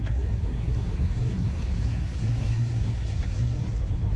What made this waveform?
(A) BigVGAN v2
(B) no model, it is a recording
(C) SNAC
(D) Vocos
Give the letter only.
C